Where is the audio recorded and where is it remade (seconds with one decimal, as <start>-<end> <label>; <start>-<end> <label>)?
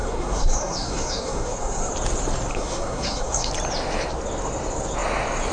0.0-1.9 remade; 1.9-2.5 recorded; 2.5-3.5 remade; 3.5-5.5 recorded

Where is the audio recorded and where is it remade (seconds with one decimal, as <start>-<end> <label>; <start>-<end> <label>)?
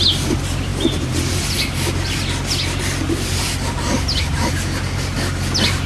0.0-5.9 recorded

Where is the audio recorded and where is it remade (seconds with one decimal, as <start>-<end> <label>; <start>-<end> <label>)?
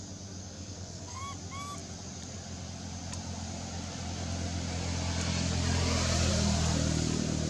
0.0-0.4 recorded; 0.4-1.2 remade; 1.2-7.5 recorded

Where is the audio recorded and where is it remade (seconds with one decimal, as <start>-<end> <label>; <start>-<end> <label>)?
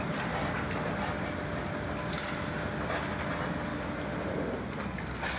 0.0-5.4 recorded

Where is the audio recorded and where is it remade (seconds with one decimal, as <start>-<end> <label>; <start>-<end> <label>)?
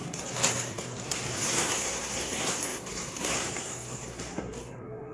0.0-5.1 remade